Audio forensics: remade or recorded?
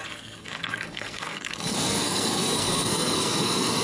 remade